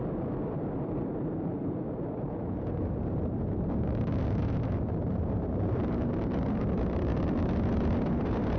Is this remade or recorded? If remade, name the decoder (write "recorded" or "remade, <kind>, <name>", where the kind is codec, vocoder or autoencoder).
remade, vocoder, BigVGAN v2